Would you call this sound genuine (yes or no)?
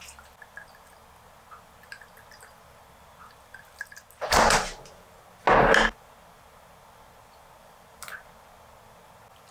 yes